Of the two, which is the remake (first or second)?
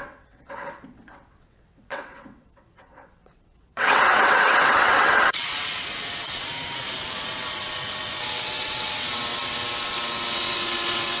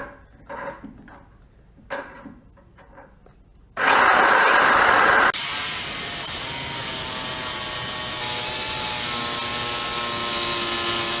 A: first